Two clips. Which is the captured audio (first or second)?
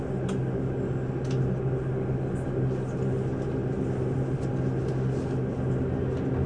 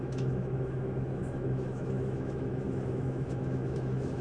first